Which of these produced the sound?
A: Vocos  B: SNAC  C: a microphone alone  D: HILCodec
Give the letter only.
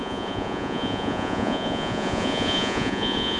A